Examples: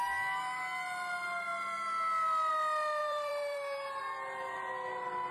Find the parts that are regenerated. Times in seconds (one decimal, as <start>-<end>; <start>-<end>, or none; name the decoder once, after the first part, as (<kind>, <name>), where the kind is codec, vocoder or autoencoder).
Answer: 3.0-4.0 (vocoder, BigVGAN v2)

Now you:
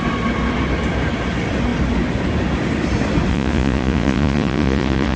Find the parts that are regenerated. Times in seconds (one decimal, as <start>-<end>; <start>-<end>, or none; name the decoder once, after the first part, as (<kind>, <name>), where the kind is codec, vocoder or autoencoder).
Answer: 3.3-5.2 (vocoder, Vocos)

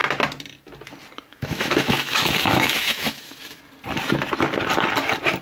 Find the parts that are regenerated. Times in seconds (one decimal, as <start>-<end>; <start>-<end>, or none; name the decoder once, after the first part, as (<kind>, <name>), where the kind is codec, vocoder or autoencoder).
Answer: 1.3-3.6 (autoencoder, DAC-VAE)

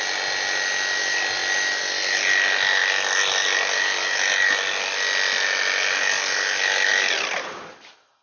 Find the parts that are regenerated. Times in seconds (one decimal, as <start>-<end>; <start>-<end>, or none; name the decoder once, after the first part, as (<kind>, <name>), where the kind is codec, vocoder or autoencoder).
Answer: none